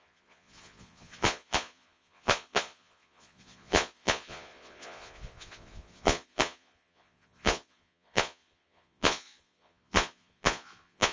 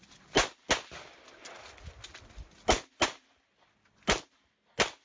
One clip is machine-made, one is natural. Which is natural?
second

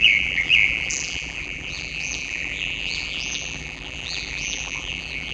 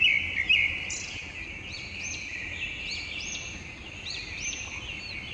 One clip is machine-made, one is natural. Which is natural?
second